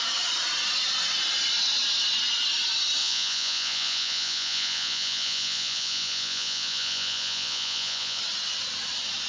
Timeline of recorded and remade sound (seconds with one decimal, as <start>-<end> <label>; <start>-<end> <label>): 0.0-3.0 recorded; 3.0-8.2 remade; 8.2-9.3 recorded